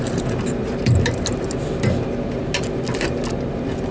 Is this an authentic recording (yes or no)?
yes